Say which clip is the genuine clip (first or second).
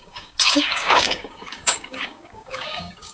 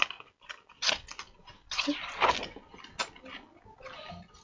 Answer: second